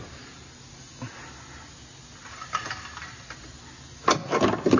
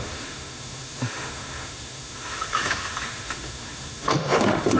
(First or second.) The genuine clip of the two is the first